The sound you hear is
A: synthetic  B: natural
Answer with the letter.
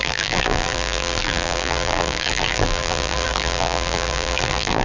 A